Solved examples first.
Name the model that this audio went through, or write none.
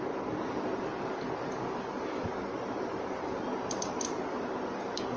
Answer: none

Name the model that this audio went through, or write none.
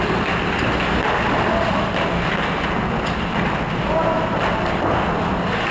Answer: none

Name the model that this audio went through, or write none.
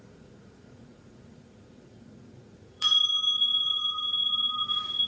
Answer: vocoder, Vocos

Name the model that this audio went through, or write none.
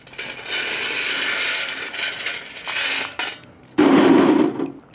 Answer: none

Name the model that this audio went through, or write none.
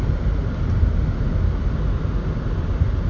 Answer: none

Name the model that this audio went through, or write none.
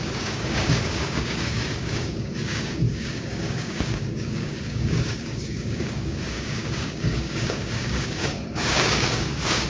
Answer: codec, DAC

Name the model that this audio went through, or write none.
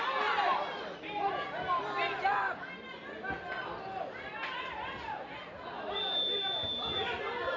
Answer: none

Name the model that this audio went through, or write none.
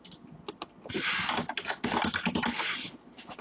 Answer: none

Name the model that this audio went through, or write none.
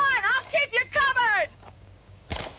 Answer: codec, DAC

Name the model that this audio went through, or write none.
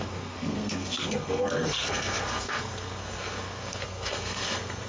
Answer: codec, SNAC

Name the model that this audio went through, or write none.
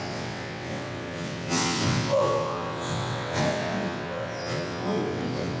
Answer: vocoder, WaveNeXt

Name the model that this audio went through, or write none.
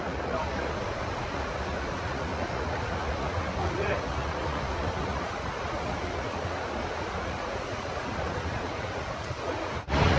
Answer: vocoder, Vocos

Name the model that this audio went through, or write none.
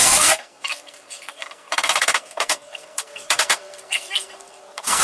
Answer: codec, SNAC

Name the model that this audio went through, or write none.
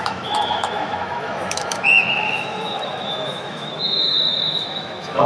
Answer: autoencoder, DAC-VAE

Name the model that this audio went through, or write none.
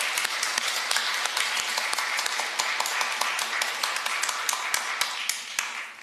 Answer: none